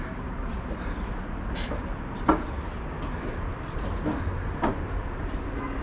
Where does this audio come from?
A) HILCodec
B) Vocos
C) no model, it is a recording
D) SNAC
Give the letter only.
C